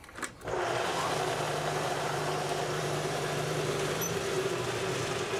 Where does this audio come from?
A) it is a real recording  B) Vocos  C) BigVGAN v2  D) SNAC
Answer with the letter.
C